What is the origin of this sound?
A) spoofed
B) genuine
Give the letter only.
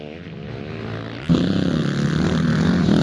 B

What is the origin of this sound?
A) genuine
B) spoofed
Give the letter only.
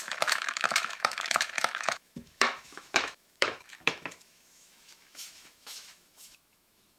B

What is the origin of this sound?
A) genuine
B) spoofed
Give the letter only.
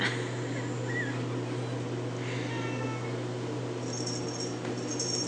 A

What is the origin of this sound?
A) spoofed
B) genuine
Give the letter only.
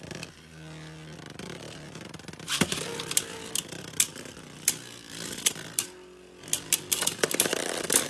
B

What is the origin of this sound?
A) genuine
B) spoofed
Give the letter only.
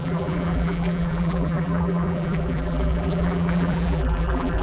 B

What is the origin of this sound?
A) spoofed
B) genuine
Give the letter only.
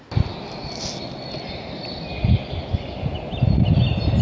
B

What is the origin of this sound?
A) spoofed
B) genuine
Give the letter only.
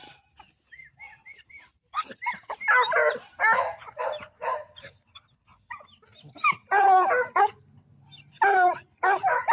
B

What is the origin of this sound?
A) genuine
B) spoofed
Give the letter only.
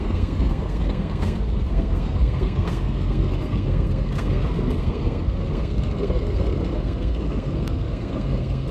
B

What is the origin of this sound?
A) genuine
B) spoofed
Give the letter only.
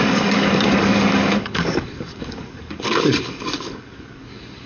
B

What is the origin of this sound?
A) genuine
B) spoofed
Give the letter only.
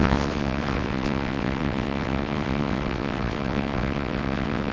B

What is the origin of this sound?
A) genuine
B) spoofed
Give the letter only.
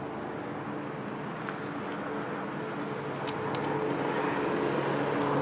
A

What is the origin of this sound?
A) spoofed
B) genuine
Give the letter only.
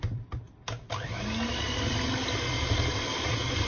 B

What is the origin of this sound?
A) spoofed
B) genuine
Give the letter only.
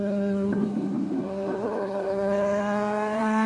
A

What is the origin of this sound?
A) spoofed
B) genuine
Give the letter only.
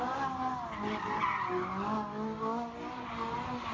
B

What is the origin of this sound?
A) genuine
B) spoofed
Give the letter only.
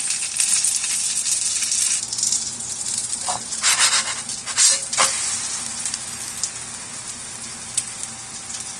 A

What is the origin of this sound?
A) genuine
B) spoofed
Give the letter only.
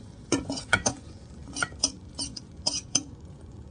B